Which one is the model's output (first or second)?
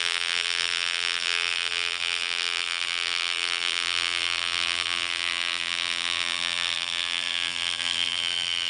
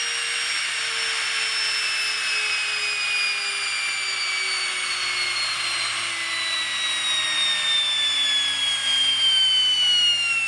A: first